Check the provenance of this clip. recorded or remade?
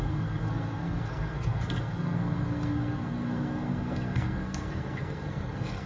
remade